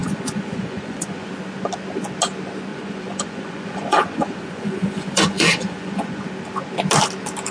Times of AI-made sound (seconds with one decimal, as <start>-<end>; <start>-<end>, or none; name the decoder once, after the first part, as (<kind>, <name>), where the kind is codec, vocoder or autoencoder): 0.0-1.3 (vocoder, Vocos); 2.7-6.3